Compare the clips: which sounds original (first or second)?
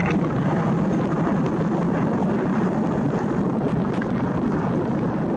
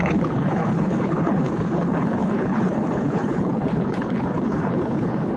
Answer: first